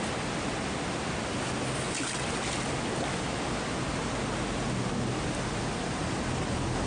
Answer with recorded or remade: recorded